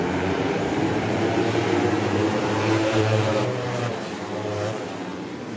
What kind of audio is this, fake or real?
fake